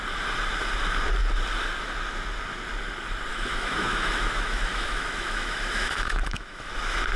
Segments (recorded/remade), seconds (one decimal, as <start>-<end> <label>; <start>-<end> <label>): 0.0-3.3 recorded; 3.3-6.7 remade; 6.7-7.2 recorded